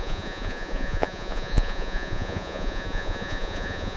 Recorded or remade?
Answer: remade